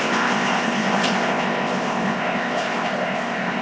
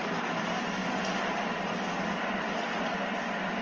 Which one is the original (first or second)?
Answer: second